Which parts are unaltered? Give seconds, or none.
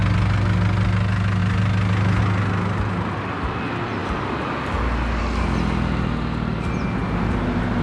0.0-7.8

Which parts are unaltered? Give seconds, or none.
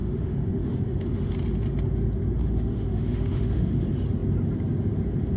1.3-2.4; 3.8-5.4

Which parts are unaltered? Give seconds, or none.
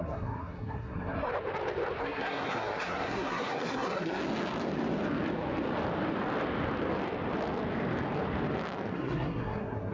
1.3-2.0; 4.2-8.9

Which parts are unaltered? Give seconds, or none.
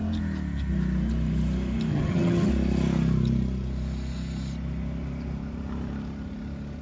0.0-1.9; 2.5-6.8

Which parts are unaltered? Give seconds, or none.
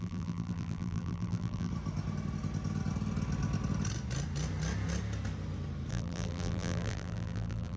1.7-5.9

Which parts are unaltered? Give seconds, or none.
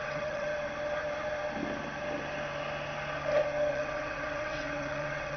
0.5-3.7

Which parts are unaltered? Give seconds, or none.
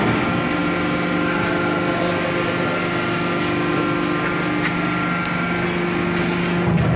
0.0-7.0